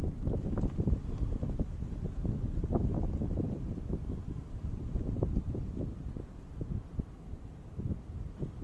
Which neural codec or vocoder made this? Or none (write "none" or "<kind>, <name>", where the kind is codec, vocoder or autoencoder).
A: vocoder, BigVGAN v2